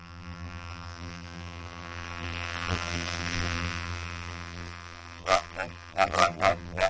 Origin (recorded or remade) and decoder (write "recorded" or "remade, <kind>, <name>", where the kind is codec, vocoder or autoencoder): remade, vocoder, BigVGAN v2